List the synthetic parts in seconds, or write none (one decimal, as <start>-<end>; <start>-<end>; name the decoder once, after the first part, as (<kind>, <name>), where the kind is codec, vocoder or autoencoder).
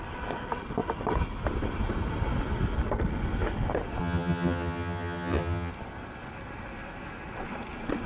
4.0-5.7 (vocoder, HiFi-GAN)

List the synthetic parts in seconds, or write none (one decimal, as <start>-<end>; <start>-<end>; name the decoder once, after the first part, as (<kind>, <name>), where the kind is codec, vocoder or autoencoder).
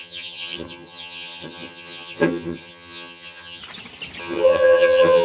0.0-3.6 (vocoder, HiFi-GAN); 4.2-5.2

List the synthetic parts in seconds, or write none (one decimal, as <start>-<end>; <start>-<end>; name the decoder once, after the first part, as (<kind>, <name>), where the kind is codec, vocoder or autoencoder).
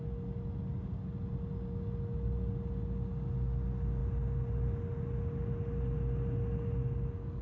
none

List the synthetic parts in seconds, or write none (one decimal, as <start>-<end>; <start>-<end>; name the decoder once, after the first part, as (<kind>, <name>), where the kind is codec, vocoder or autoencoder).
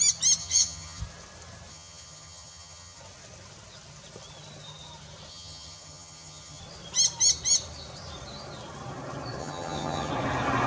0.4-1.0 (vocoder, HiFi-GAN); 1.7-3.0; 5.3-6.6; 9.4-10.1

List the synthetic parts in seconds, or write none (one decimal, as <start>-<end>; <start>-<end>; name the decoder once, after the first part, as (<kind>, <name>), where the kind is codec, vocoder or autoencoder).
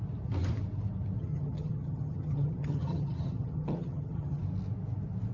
1.2-4.4 (vocoder, HiFi-GAN)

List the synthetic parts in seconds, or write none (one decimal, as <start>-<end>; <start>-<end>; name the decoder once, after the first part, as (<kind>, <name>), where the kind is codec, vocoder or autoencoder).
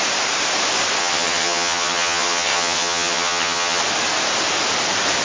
1.0-3.8 (vocoder, HiFi-GAN)